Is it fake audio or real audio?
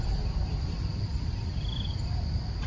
real